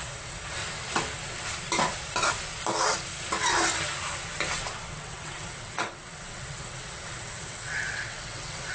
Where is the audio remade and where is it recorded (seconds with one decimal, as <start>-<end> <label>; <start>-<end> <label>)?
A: 0.0-0.6 remade; 0.6-4.9 recorded; 4.9-8.7 remade